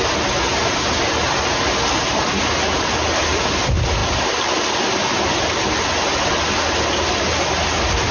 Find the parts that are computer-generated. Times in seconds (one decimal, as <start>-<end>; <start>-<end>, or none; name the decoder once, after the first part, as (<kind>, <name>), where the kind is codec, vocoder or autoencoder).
none